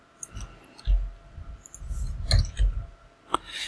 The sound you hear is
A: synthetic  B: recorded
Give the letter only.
B